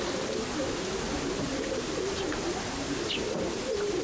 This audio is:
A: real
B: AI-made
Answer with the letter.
A